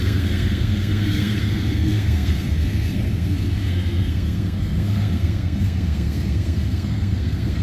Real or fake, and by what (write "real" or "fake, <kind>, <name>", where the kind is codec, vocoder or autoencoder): fake, codec, SNAC